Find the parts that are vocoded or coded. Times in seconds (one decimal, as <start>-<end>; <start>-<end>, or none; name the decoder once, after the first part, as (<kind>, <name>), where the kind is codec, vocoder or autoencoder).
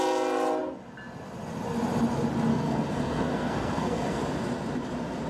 2.5-4.2 (codec, SNAC)